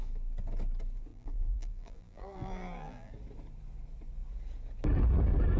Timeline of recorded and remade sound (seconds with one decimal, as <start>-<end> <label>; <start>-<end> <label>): 0.0-1.1 recorded; 1.1-3.1 remade; 3.1-5.6 recorded